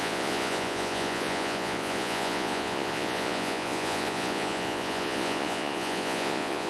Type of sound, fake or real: fake